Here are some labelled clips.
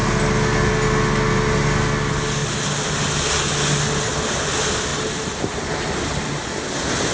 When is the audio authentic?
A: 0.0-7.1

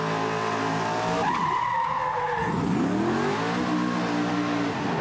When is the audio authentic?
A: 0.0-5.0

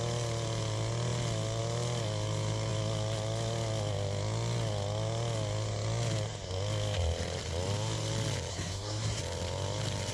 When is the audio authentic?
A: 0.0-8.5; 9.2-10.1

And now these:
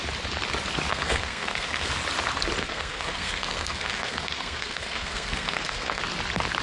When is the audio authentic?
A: 0.0-0.9; 1.9-2.6; 6.0-6.6

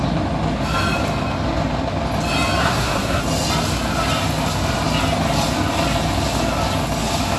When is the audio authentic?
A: 0.0-2.6; 3.2-7.4

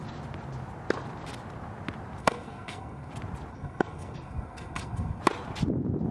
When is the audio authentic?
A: 0.0-2.2; 3.1-3.5; 5.2-6.1